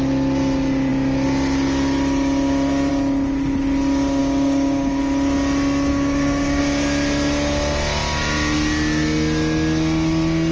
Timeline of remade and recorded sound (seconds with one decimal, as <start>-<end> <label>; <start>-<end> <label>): 0.0-4.2 recorded; 4.2-5.0 remade; 5.0-5.9 recorded; 5.9-6.6 remade; 6.6-10.5 recorded